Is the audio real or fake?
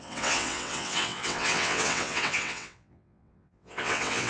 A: fake